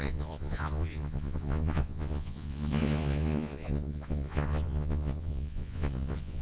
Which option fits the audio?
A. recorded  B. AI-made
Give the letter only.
B